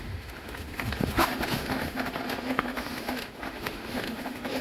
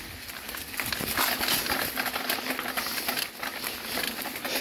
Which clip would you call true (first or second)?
second